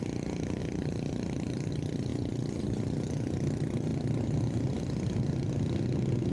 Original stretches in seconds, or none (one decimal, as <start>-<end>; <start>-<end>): 0.0-0.6; 1.7-6.3

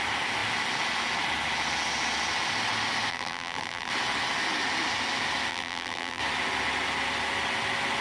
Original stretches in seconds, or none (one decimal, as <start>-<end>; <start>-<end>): 0.0-3.1; 3.9-5.5; 6.2-8.0

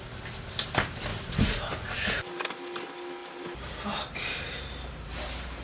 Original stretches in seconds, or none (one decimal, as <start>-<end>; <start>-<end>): 0.0-1.1; 2.4-3.2